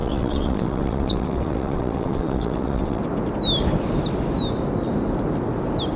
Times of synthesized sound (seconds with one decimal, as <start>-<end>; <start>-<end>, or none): 0.0-3.0